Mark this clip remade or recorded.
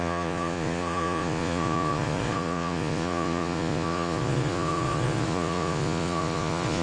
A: remade